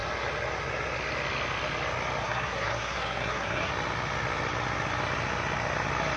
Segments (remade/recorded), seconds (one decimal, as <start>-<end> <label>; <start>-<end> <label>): 0.0-2.2 recorded; 2.2-3.7 remade; 3.7-6.2 recorded